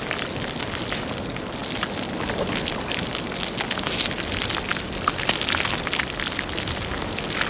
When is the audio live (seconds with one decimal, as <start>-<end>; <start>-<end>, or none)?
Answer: 0.0-7.5